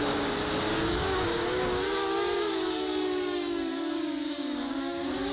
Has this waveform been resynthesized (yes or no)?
yes